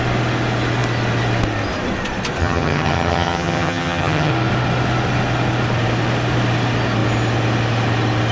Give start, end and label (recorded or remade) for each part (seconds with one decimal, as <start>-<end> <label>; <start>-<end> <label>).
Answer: 0.0-2.4 recorded; 2.4-4.3 remade; 4.3-8.3 recorded

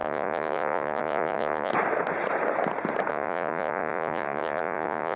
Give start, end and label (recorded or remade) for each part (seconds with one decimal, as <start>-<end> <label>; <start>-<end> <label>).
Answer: 0.0-1.7 remade; 1.7-3.1 recorded; 3.1-5.2 remade

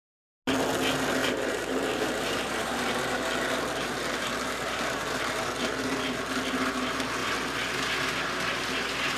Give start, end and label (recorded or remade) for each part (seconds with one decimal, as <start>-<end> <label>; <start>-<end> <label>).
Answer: 0.0-1.2 recorded; 1.2-5.3 remade; 5.3-9.2 recorded